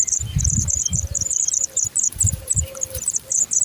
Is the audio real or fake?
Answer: fake